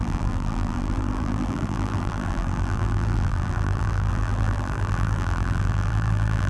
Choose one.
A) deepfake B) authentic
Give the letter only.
A